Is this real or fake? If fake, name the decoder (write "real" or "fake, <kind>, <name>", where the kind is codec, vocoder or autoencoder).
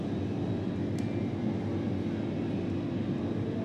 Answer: real